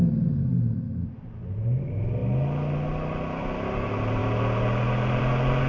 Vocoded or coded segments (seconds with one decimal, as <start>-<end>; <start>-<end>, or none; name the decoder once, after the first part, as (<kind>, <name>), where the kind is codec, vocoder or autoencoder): none